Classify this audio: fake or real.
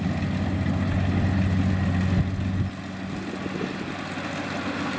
real